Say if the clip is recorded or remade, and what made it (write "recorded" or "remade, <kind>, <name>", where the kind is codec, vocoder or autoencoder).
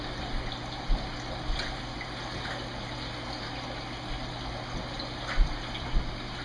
recorded